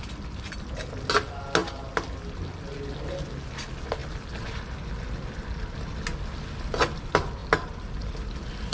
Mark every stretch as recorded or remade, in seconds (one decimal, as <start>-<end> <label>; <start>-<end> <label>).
0.0-8.7 recorded